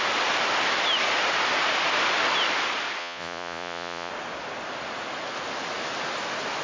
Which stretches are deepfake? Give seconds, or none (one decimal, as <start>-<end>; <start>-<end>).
3.0-4.1